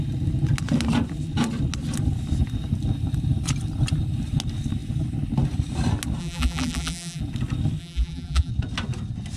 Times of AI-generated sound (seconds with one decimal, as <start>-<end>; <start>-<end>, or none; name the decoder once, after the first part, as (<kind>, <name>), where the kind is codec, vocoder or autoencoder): 6.2-7.2 (vocoder, BigVGAN v2); 7.8-8.5